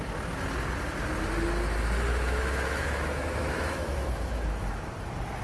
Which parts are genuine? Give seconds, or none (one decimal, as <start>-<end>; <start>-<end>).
0.0-2.1; 4.9-5.4